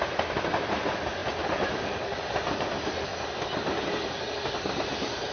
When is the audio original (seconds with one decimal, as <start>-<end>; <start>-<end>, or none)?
3.1-4.5